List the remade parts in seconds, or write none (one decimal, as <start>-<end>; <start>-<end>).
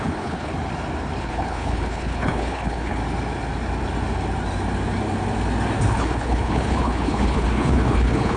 0.0-0.5; 1.2-3.0; 5.8-8.4